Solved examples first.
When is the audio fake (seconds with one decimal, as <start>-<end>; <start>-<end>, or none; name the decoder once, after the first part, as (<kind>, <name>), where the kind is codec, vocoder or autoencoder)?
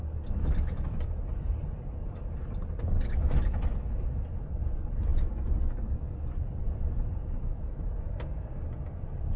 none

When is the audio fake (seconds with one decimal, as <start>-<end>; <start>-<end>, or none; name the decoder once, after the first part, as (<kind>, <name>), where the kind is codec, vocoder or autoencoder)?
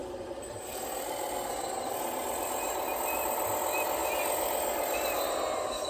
0.0-3.5 (vocoder, BigVGAN v2); 4.0-5.3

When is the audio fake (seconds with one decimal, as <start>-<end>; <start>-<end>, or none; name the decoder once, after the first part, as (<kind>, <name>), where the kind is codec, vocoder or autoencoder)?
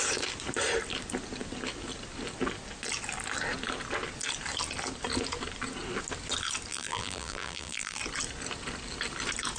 6.7-8.0 (vocoder, BigVGAN v2)